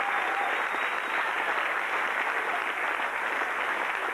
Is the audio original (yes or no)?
yes